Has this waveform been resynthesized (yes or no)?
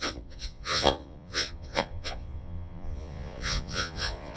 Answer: yes